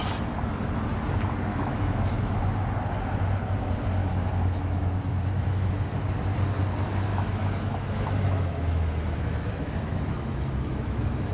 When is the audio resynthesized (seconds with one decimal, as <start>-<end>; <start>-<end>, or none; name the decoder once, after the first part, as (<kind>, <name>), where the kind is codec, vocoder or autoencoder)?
1.5-2.4 (autoencoder, DAC-VAE); 4.0-5.7; 7.1-11.3